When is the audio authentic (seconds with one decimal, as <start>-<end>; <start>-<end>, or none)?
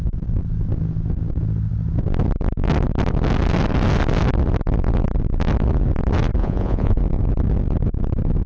0.0-6.4; 7.0-8.5